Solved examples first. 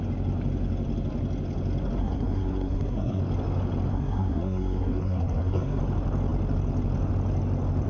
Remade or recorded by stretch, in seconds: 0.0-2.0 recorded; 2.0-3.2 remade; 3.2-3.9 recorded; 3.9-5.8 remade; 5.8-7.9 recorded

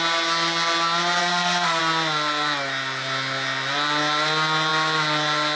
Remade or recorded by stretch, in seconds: 0.0-1.2 recorded; 1.2-1.8 remade; 1.8-5.6 recorded

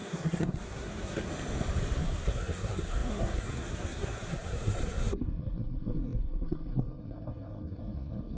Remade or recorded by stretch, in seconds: 0.0-1.3 remade; 1.3-2.0 recorded; 2.0-8.4 remade

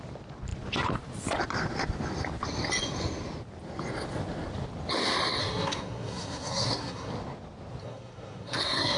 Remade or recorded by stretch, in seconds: 0.0-5.4 recorded; 5.4-7.1 remade; 7.1-7.8 recorded; 7.8-9.0 remade

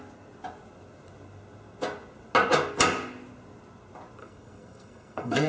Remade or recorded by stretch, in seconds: 0.0-4.2 recorded; 4.2-5.5 remade

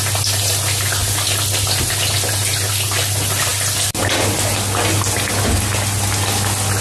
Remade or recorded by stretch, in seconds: 0.0-6.8 recorded